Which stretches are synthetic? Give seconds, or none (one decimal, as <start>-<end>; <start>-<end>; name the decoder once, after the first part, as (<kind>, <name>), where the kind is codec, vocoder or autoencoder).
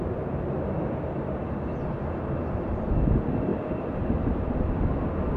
3.5-4.5 (vocoder, BigVGAN v2)